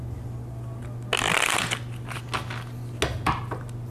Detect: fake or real real